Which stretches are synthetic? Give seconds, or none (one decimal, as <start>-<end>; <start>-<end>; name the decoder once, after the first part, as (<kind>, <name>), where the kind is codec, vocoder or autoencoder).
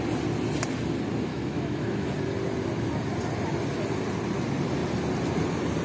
1.3-2.1 (autoencoder, DAC-VAE)